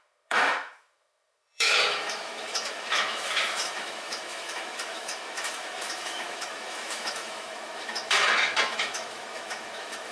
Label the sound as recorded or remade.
remade